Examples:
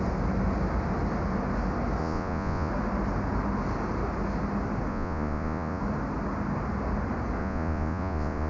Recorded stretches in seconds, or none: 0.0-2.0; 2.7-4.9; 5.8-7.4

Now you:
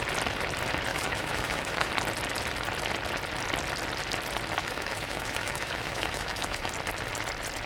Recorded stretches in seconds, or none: 0.0-0.9; 1.9-4.6; 6.7-7.7

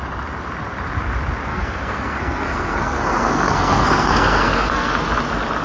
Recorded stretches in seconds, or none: 0.0-1.5; 4.9-5.6

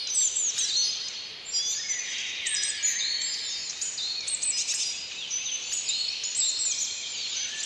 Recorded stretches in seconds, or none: 0.0-7.7